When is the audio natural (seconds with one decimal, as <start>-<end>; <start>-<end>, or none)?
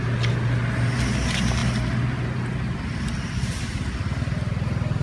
0.0-5.0